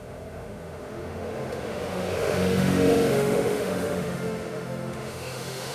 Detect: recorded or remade remade